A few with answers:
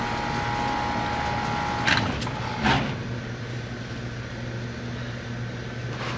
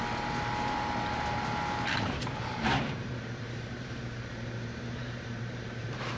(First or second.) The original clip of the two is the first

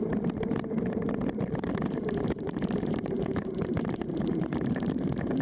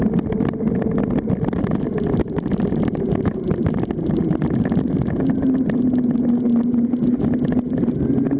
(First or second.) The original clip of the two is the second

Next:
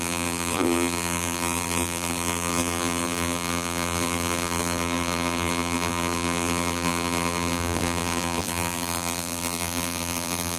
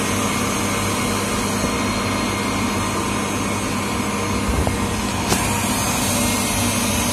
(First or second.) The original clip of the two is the second